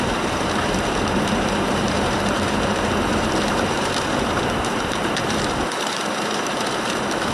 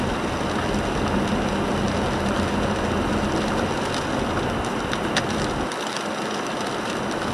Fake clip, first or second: first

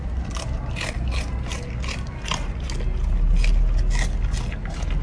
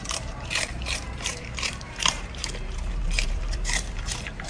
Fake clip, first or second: second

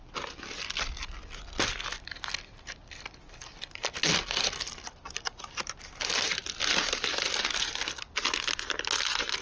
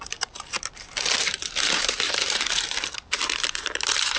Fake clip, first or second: second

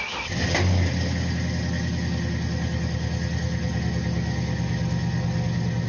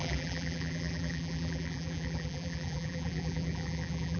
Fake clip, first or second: second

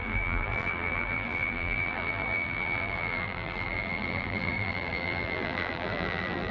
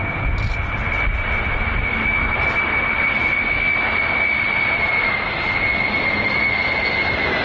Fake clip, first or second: first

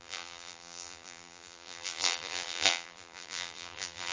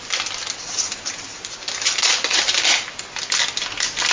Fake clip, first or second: first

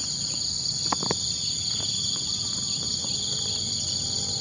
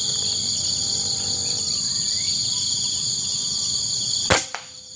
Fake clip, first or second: first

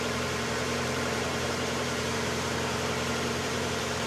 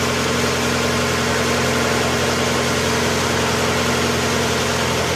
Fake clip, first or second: first